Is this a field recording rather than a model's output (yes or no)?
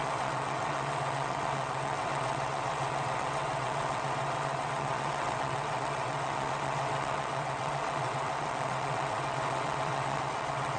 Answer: no